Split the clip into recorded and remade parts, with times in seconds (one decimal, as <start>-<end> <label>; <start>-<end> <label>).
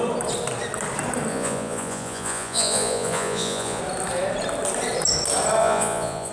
0.0-1.3 recorded; 1.3-3.8 remade; 3.8-5.6 recorded; 5.6-6.3 remade